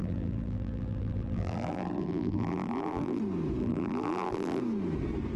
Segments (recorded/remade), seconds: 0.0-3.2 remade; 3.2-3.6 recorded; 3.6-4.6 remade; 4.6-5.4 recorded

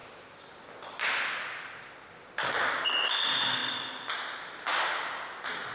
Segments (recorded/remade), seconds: 0.0-3.6 recorded; 3.6-4.4 remade; 4.4-5.7 recorded

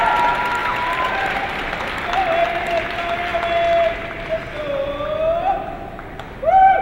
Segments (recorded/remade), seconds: 0.0-6.8 recorded

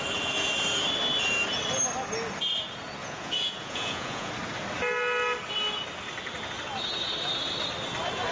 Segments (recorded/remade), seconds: 0.0-3.0 recorded; 3.0-4.3 remade; 4.3-8.3 recorded

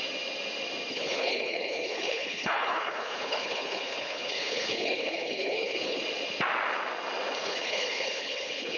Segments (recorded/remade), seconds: 0.0-0.9 recorded; 0.9-6.0 remade; 6.0-7.4 recorded; 7.4-8.8 remade

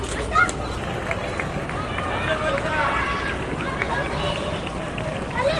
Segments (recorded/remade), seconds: 0.0-5.6 recorded